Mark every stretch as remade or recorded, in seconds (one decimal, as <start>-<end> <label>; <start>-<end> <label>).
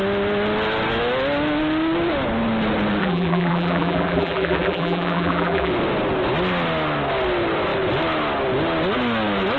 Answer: 0.0-3.0 recorded; 3.0-5.7 remade; 5.7-9.6 recorded